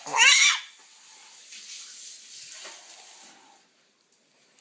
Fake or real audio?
real